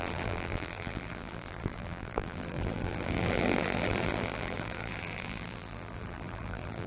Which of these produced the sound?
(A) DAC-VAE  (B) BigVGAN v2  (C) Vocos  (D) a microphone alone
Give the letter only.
B